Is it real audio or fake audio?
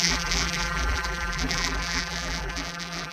fake